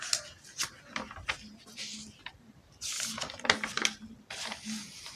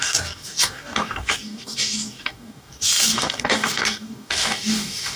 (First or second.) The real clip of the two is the first